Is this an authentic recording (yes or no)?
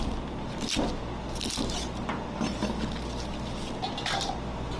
yes